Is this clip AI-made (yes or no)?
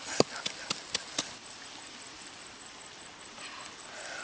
no